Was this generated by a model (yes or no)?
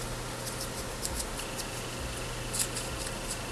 no